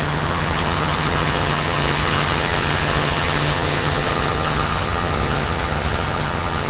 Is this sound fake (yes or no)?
yes